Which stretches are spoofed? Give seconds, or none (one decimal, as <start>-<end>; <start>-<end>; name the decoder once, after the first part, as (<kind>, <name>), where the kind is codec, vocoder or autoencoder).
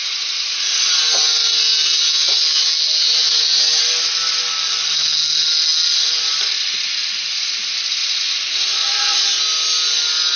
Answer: 0.0-0.8 (vocoder, Vocos); 8.0-9.2